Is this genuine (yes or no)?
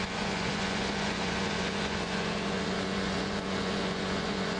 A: no